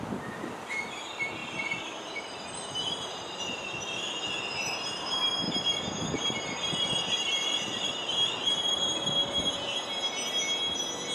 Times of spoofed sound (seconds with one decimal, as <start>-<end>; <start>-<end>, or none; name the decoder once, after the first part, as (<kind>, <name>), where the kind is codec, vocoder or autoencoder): 1.4-3.3 (vocoder, BigVGAN v2)